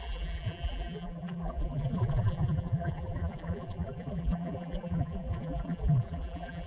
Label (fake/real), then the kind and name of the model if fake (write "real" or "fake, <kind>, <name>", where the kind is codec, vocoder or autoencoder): fake, vocoder, BigVGAN v2